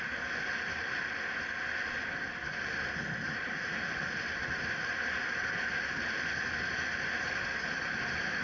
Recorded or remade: recorded